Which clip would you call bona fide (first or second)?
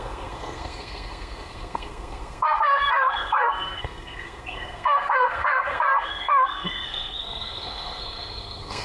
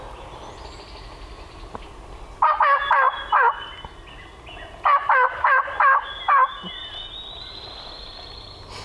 second